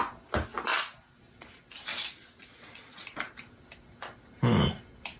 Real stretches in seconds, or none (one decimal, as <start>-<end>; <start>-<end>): 0.0-1.9; 3.2-5.2

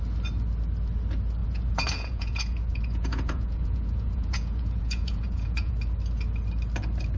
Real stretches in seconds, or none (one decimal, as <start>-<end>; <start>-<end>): 0.0-1.4; 5.7-7.2

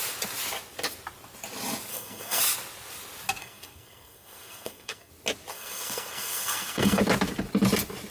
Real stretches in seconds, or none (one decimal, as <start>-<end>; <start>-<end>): 0.0-1.9; 2.4-3.4; 5.1-5.5; 7.0-8.1